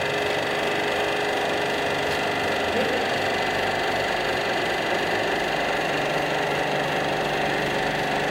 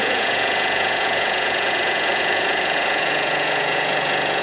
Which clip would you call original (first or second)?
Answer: first